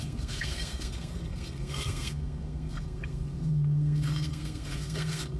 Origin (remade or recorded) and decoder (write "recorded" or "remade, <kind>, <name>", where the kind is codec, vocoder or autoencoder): remade, codec, SNAC